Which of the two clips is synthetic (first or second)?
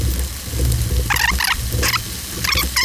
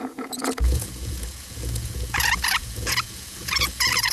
second